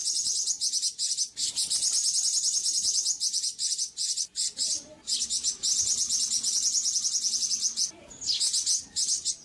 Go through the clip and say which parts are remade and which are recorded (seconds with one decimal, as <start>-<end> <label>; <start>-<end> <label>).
0.0-0.5 remade; 0.5-3.3 recorded; 3.3-4.8 remade; 4.8-9.4 recorded